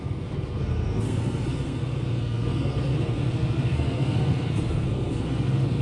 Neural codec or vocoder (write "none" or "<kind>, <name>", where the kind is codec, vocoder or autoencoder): codec, SNAC